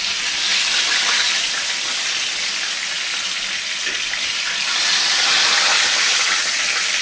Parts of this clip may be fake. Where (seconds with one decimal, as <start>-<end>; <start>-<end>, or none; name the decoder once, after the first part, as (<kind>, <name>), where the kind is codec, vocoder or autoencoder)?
none